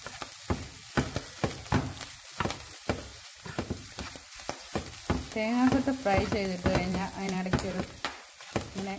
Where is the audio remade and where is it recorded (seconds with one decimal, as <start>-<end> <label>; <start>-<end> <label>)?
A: 0.0-3.1 recorded; 3.1-4.9 remade; 4.9-6.9 recorded; 6.9-8.3 remade; 8.3-9.0 recorded